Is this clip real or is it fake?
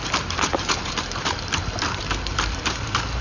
fake